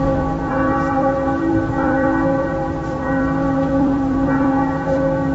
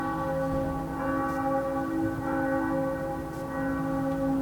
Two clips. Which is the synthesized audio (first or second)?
first